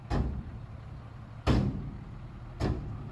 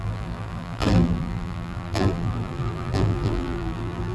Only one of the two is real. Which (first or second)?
first